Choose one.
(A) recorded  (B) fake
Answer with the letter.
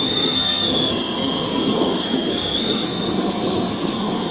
B